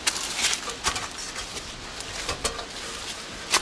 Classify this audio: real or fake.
real